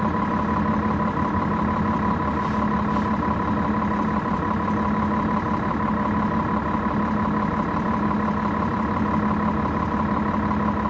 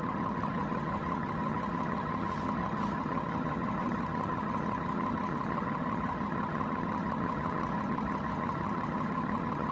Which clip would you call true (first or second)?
first